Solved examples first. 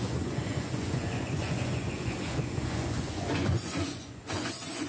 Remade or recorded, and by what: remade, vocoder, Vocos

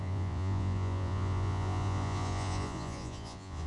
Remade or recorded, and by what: remade, vocoder, Vocos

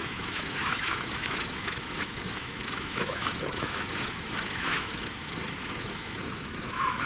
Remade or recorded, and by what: remade, autoencoder, DAC-VAE